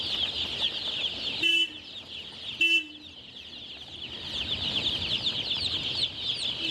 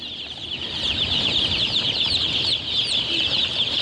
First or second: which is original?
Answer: first